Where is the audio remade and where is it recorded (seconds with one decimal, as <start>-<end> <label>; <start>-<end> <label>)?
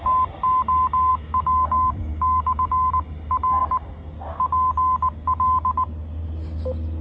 0.0-1.1 recorded; 1.1-2.9 remade; 2.9-7.0 recorded